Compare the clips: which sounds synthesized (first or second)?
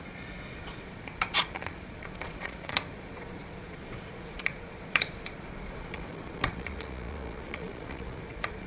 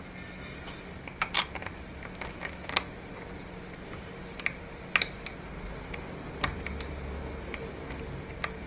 first